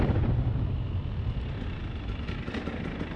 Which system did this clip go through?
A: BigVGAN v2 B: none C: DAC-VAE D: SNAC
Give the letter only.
B